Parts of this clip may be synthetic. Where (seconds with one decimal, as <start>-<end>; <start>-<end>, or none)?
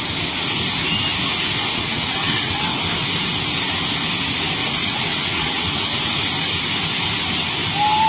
1.7-2.8; 4.6-6.2